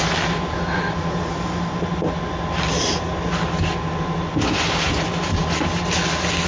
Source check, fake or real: real